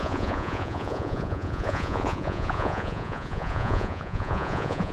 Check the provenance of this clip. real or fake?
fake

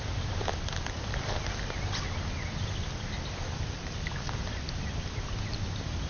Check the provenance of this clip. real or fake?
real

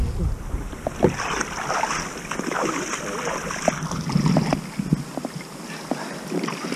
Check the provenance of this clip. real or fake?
real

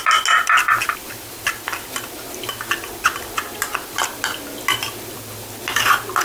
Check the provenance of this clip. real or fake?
real